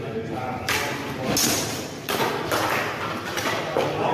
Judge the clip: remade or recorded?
recorded